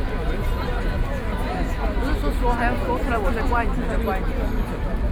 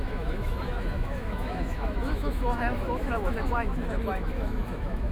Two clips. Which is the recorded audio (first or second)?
first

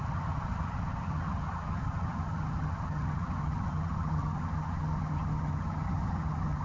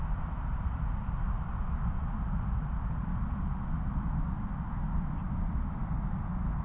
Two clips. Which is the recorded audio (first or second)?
second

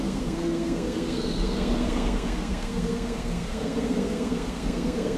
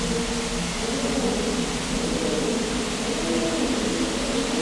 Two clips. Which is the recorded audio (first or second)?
second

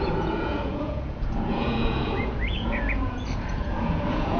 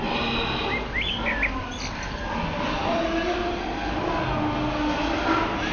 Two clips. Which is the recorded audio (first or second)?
second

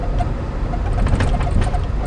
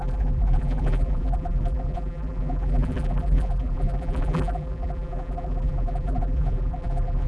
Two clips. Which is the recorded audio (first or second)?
first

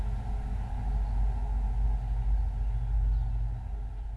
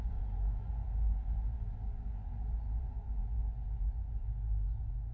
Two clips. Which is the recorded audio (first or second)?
first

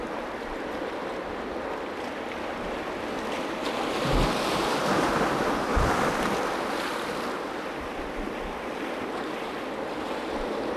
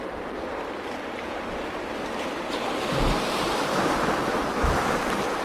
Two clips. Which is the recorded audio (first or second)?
first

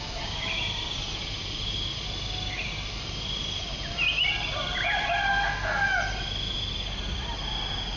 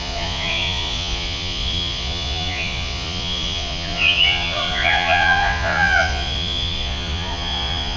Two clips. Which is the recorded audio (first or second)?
first